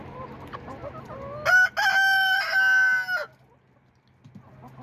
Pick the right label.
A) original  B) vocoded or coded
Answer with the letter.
A